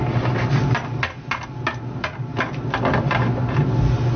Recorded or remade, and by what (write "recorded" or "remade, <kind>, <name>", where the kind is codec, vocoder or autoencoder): recorded